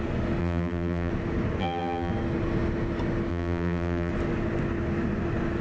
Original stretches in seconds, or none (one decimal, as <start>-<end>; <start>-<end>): 0.0-0.4; 1.1-1.6; 2.1-3.3; 4.1-5.6